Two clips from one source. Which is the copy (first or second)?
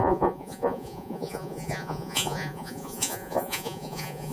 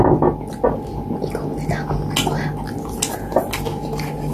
first